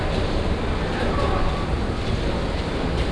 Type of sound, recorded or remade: recorded